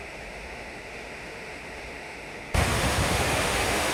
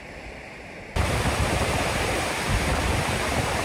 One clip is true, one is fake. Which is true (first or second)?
second